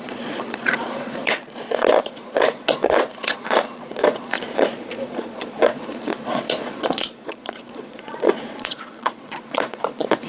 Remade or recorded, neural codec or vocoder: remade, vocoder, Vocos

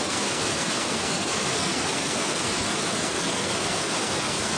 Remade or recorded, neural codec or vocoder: remade, codec, SNAC